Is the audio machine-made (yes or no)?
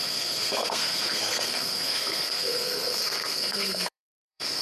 yes